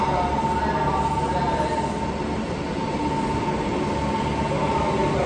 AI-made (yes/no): no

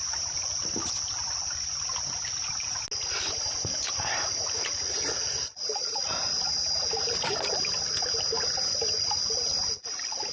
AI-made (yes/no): no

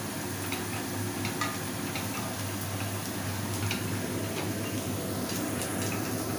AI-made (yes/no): no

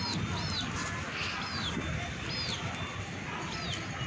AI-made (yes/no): no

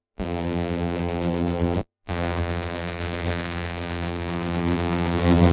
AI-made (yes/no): yes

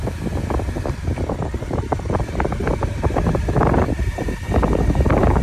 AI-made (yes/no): no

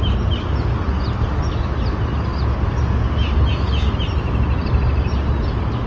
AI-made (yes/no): no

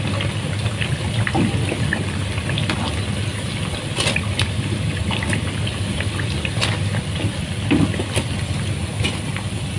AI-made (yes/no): no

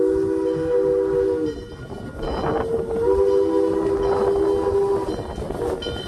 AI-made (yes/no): no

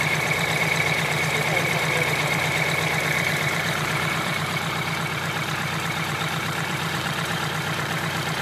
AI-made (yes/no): yes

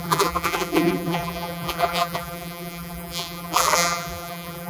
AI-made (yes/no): yes